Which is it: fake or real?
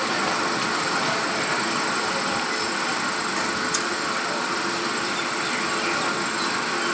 real